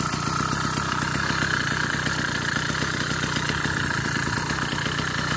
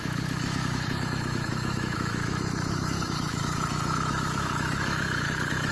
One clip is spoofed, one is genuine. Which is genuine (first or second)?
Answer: first